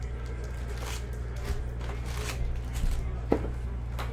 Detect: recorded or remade recorded